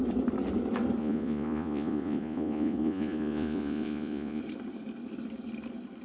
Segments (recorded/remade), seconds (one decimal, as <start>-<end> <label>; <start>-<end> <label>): 0.0-1.0 recorded; 1.0-4.4 remade; 4.4-6.0 recorded